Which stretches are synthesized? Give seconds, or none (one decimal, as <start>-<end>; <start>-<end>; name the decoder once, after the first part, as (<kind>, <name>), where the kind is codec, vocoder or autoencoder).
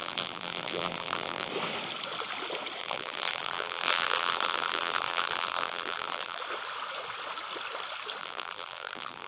0.0-1.5 (vocoder, BigVGAN v2); 2.8-6.4; 8.2-9.3